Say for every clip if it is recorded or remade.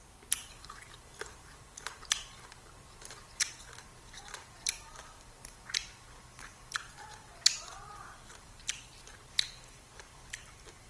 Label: remade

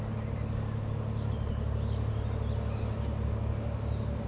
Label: recorded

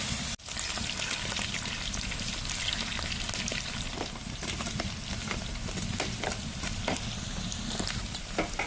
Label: recorded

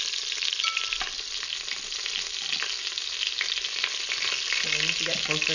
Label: recorded